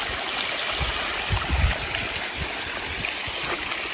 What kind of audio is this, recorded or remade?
recorded